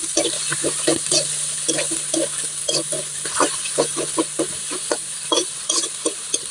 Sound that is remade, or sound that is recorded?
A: recorded